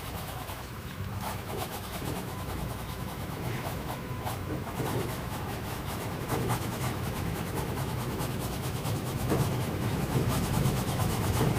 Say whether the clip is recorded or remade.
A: remade